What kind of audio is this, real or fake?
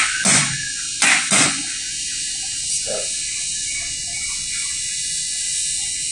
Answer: fake